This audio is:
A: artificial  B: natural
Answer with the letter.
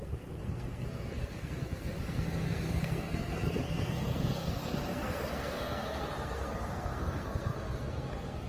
A